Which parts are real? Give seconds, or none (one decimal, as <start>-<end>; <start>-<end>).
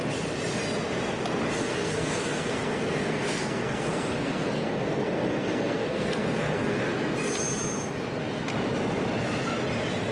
0.0-1.6; 6.8-10.1